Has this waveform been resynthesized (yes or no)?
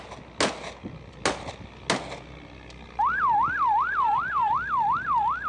no